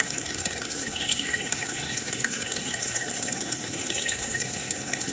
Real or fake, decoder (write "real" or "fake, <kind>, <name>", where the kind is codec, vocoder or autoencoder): fake, codec, SNAC